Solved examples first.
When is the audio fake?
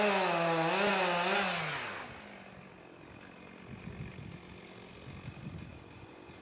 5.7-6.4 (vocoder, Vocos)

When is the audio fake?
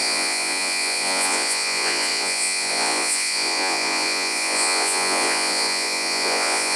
0.0-6.8 (vocoder, Vocos)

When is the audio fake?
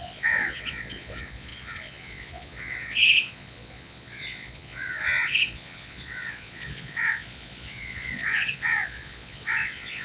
0.0-10.0 (vocoder, Vocos)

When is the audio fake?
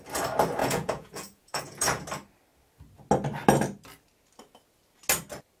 0.6-2.0 (vocoder, Vocos)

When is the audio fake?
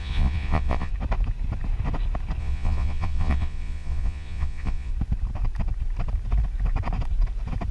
0.0-0.9 (vocoder, Vocos); 2.4-4.9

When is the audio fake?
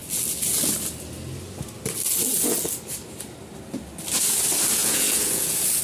4.8-5.8 (vocoder, Vocos)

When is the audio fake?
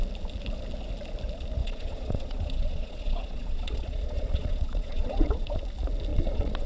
1.6-5.6 (vocoder, Vocos); 6.1-6.7